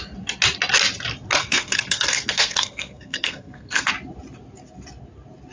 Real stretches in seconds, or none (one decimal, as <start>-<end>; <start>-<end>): 0.0-1.4; 3.9-5.5

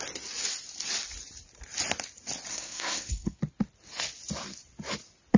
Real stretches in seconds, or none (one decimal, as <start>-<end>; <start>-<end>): 0.0-2.5; 3.4-5.4

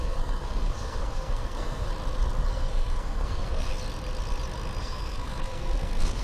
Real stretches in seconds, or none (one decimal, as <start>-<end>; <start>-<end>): 1.9-2.5; 3.7-4.8

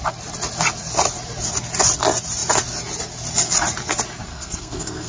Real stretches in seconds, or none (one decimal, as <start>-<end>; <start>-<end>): 0.0-4.3